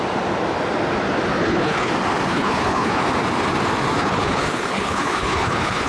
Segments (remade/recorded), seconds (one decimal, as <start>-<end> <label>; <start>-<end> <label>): 0.0-1.4 recorded; 1.4-1.9 remade; 1.9-2.3 recorded; 2.3-3.0 remade; 3.0-4.0 recorded; 4.0-5.9 remade

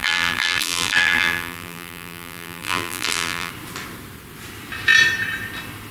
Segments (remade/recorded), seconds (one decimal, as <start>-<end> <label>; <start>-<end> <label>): 0.0-3.5 remade; 3.5-5.9 recorded

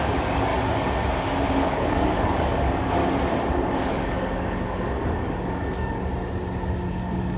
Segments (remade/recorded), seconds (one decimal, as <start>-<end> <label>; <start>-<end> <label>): 0.0-0.5 remade; 0.5-1.5 recorded; 1.5-3.0 remade; 3.0-3.7 recorded; 3.7-6.1 remade; 6.1-6.9 recorded; 6.9-7.4 remade

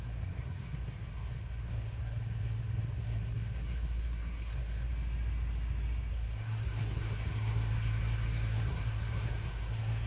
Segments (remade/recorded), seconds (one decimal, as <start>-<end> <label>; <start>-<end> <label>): 0.0-4.9 remade; 4.9-6.1 recorded; 6.1-10.1 remade

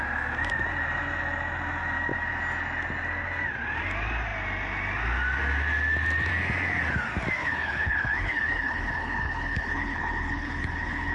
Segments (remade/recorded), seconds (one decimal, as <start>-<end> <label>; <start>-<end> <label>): 0.0-7.4 recorded; 7.4-11.1 remade

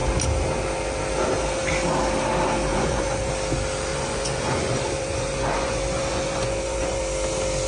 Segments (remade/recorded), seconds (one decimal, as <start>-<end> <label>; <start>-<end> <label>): 0.0-2.7 recorded; 2.7-3.3 remade; 3.3-3.9 recorded; 3.9-7.0 remade; 7.0-7.7 recorded

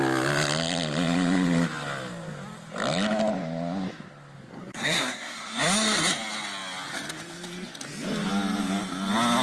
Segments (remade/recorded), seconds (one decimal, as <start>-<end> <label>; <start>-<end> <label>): 0.0-4.5 recorded; 4.5-5.6 remade; 5.6-9.4 recorded